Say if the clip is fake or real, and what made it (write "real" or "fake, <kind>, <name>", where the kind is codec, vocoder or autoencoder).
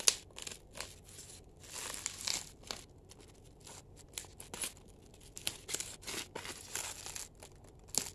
real